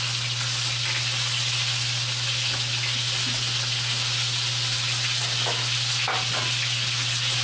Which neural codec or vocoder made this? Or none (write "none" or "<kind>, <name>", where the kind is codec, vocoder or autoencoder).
none